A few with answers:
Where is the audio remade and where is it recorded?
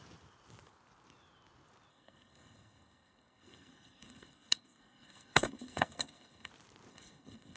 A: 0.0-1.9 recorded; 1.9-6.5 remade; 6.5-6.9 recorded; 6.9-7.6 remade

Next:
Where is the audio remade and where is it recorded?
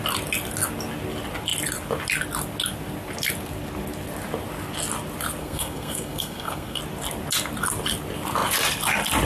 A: 0.0-5.4 recorded; 5.4-6.8 remade; 6.8-9.3 recorded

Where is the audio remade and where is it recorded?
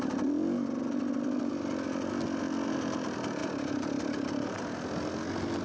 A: 0.0-5.6 recorded